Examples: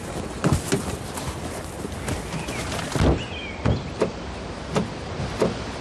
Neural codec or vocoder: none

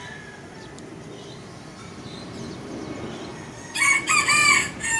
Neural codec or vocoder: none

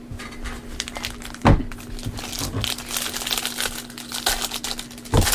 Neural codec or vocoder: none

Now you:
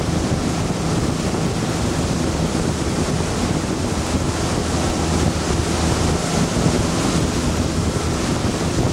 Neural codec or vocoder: none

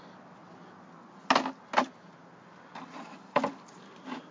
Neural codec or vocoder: none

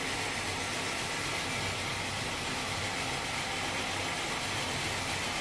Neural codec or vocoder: none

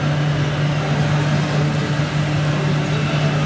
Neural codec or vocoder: none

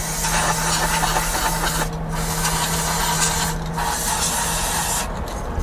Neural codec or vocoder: none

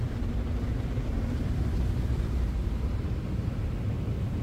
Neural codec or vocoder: vocoder, BigVGAN v2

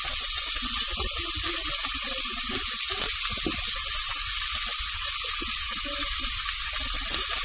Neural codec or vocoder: none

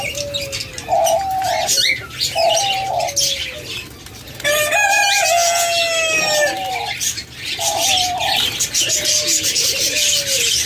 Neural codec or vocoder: none